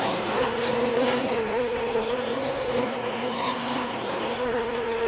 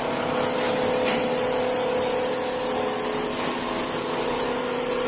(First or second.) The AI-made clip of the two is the first